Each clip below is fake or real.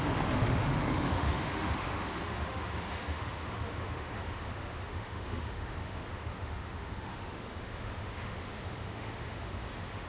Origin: fake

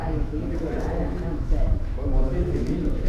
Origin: fake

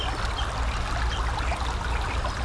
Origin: real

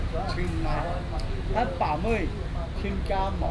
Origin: real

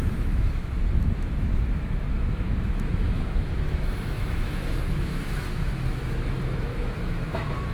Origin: fake